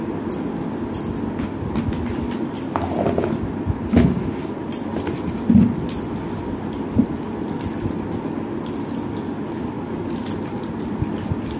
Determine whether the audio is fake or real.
real